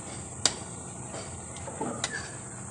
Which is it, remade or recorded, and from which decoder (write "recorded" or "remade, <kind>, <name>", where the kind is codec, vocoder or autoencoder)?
recorded